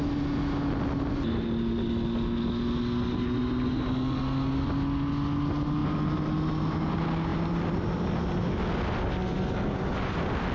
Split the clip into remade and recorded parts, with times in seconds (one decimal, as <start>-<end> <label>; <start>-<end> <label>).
0.0-10.5 recorded